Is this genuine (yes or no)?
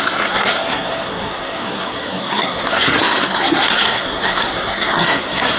no